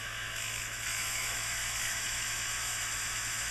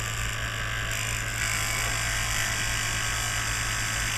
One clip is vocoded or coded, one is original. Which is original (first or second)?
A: second